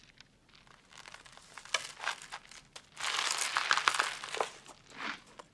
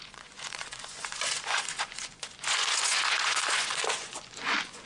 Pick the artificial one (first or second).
second